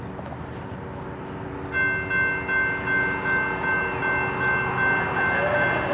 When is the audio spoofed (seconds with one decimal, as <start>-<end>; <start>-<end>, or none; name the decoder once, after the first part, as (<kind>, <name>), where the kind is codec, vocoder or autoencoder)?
none

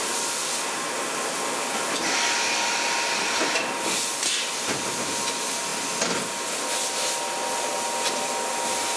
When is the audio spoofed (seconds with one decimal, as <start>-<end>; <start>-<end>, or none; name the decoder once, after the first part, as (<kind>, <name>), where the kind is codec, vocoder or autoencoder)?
none

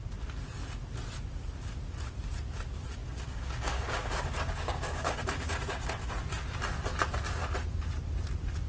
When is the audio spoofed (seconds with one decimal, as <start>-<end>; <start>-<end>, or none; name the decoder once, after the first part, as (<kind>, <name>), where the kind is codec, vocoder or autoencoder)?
3.0-5.6 (codec, DAC)

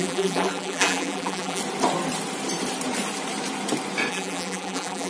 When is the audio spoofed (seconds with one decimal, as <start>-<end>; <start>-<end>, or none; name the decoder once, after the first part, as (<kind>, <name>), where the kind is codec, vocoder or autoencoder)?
0.0-1.6 (vocoder, BigVGAN v2); 4.1-5.1